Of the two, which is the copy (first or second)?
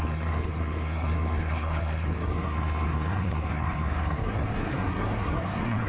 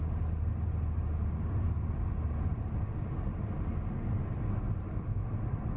first